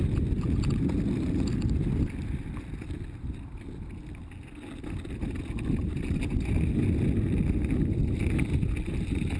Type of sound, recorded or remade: recorded